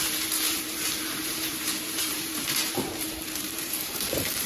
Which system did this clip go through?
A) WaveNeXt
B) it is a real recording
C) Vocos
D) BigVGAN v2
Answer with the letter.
D